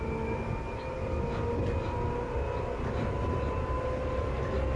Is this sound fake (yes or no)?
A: no